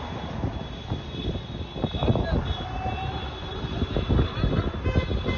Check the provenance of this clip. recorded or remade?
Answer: recorded